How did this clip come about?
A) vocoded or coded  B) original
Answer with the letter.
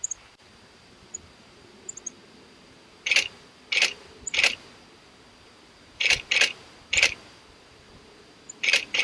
A